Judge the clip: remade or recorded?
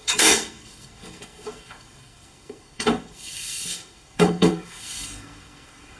remade